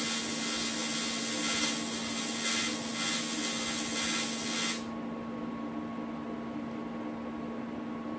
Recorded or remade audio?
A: recorded